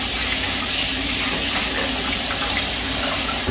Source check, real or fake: real